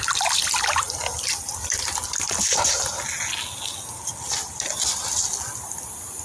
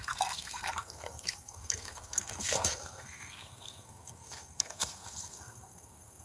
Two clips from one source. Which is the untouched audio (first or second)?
first